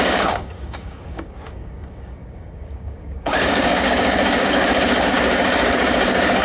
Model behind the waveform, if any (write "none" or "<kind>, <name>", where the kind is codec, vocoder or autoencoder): codec, DAC